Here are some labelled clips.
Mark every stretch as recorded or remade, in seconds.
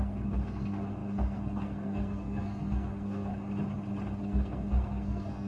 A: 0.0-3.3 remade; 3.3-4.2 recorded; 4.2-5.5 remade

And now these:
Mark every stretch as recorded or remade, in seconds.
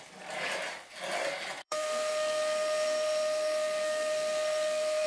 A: 0.0-1.6 recorded; 1.6-5.1 remade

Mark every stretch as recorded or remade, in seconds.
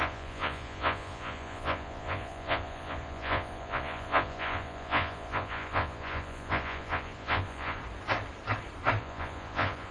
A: 0.0-7.8 remade; 7.8-9.0 recorded; 9.0-9.9 remade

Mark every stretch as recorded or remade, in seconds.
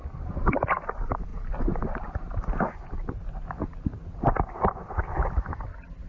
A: 0.0-6.1 recorded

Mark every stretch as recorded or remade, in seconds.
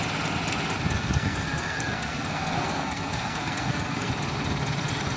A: 0.0-1.0 recorded; 1.0-4.1 remade; 4.1-5.2 recorded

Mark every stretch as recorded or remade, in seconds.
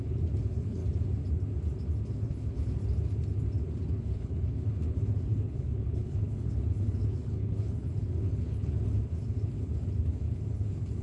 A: 0.0-0.8 remade; 0.8-2.1 recorded; 2.1-2.8 remade; 2.8-3.9 recorded; 3.9-11.0 remade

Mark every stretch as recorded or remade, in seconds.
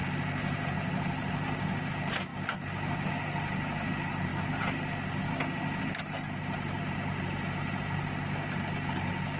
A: 0.0-1.9 remade; 1.9-9.4 recorded